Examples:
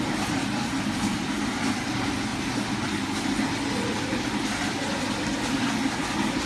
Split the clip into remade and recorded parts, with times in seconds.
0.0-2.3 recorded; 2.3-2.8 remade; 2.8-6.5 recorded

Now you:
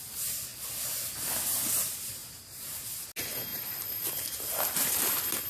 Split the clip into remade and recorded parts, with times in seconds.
0.0-2.2 recorded; 2.2-2.8 remade; 2.8-3.5 recorded; 3.5-5.0 remade; 5.0-5.5 recorded

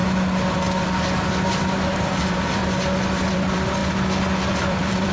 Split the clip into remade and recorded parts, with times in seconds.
0.0-1.3 recorded; 1.3-2.6 remade; 2.6-3.3 recorded; 3.3-3.8 remade; 3.8-4.5 recorded; 4.5-5.1 remade

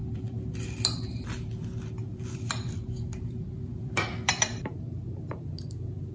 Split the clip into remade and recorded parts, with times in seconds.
0.0-0.7 remade; 0.7-2.1 recorded; 2.1-4.7 remade; 4.7-6.1 recorded